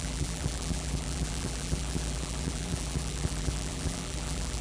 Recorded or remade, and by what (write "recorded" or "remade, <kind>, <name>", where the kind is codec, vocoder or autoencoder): remade, vocoder, BigVGAN v2